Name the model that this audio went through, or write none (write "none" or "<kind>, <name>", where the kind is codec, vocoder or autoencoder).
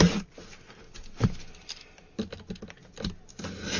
none